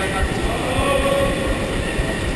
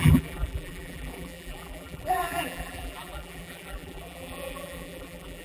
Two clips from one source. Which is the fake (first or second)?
second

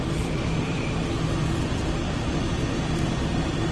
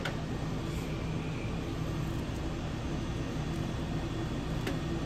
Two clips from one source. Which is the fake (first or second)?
first